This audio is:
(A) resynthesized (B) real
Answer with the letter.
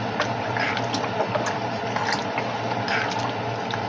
B